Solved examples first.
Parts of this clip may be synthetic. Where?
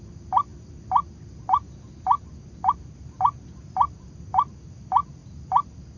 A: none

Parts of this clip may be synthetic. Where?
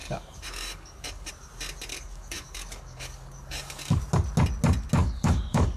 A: 0.0-1.3 (codec, DAC); 1.9-4.0; 5.0-5.8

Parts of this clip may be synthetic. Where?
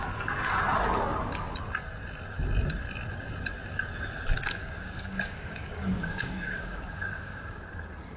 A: 4.6-7.7 (codec, DAC)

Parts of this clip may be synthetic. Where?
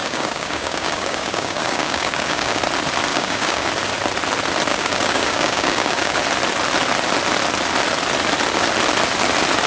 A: 0.0-2.6 (codec, DAC); 3.1-3.7; 4.7-6.2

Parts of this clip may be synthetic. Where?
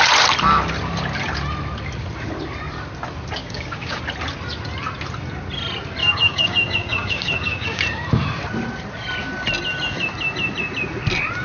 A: 3.4-4.0 (codec, DAC); 6.0-7.8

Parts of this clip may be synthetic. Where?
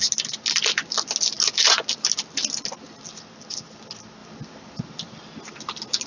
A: none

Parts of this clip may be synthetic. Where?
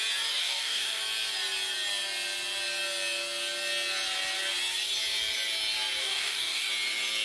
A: 0.4-1.0 (codec, DAC); 6.0-6.7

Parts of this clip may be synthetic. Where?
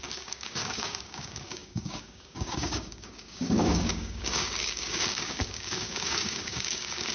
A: 0.0-7.1 (codec, DAC)